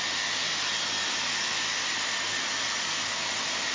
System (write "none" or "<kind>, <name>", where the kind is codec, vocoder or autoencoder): none